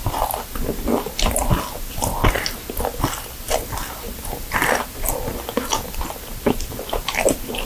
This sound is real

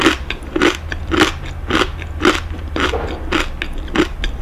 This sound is real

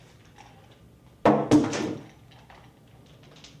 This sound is real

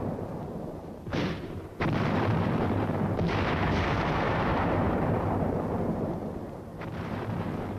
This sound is fake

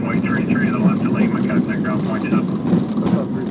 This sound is real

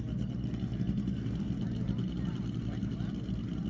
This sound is real